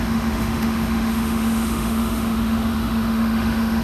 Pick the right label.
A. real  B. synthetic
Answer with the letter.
B